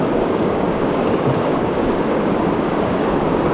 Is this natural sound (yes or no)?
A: no